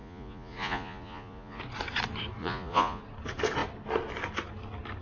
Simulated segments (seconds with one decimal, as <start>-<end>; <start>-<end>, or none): 0.0-1.6; 2.4-3.0